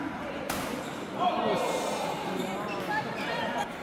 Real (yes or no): no